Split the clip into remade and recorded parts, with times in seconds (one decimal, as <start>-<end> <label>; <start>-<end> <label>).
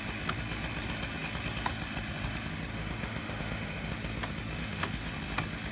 0.0-2.7 recorded; 2.7-3.9 remade; 3.9-4.6 recorded; 4.6-5.1 remade; 5.1-5.7 recorded